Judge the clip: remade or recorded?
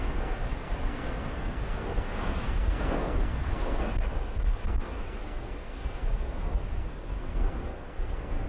remade